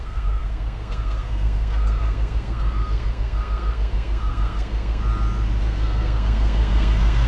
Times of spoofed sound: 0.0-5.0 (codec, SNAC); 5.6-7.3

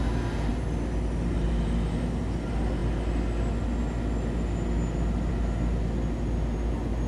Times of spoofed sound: none

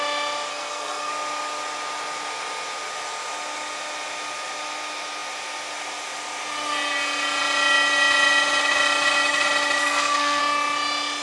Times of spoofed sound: 0.5-1.1 (codec, SNAC); 9.8-10.4